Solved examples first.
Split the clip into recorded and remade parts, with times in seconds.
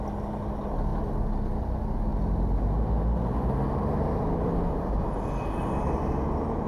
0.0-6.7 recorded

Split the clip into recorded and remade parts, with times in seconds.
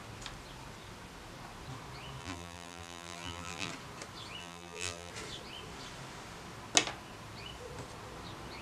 0.0-2.2 recorded; 2.2-3.7 remade; 3.7-4.4 recorded; 4.4-5.1 remade; 5.1-8.6 recorded